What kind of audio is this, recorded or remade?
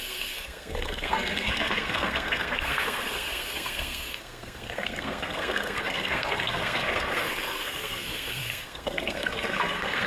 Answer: remade